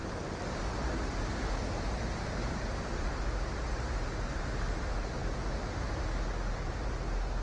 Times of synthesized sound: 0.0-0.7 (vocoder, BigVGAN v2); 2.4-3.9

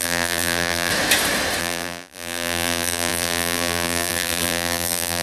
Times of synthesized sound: 0.0-0.9 (vocoder, BigVGAN v2); 1.6-5.2

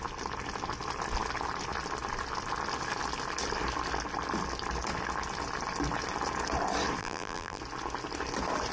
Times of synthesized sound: 7.0-7.6 (vocoder, BigVGAN v2)

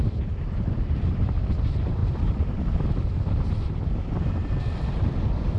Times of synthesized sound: 0.0-0.7 (vocoder, BigVGAN v2); 2.0-5.6

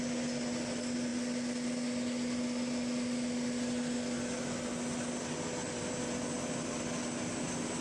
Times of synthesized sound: none

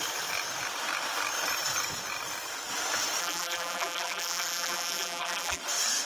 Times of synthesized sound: 3.2-5.6 (vocoder, BigVGAN v2)

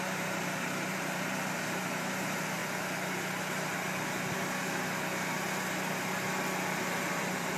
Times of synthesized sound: 0.0-2.6 (vocoder, BigVGAN v2); 6.8-7.6

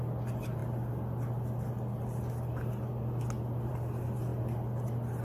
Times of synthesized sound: none